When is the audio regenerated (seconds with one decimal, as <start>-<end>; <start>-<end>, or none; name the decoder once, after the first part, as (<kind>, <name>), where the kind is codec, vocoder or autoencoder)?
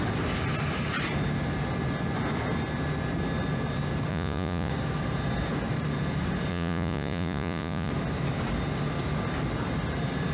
4.1-4.7 (vocoder, Vocos); 6.5-7.9